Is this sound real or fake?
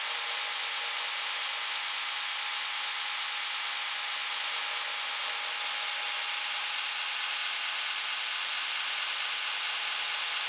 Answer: real